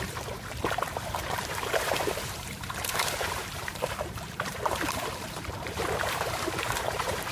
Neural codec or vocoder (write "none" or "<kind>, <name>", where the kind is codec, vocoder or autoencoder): vocoder, BigVGAN v2